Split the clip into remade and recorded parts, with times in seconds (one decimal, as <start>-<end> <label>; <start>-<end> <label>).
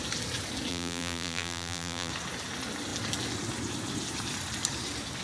0.0-0.7 recorded; 0.7-2.1 remade; 2.1-5.2 recorded